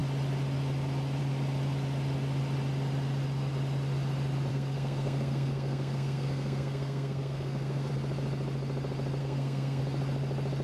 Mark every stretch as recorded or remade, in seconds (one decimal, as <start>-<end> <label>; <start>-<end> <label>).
0.0-4.5 recorded; 4.5-7.9 remade; 7.9-9.2 recorded; 9.2-9.8 remade; 9.8-10.6 recorded